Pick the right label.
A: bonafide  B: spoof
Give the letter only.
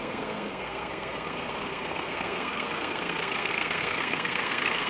B